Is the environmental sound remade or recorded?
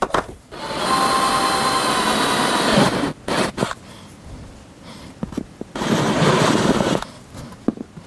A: recorded